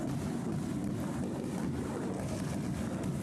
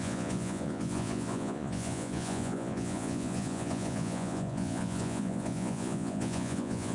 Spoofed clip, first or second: second